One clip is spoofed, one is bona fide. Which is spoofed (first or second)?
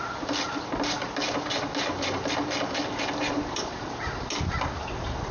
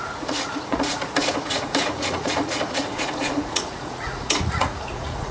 second